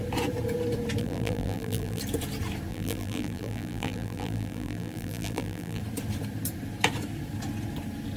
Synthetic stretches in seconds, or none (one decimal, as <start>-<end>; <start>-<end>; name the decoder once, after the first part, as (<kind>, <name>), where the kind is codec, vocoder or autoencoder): 1.0-2.0 (vocoder, BigVGAN v2); 2.7-5.8